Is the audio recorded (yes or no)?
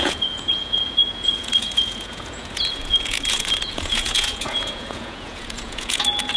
no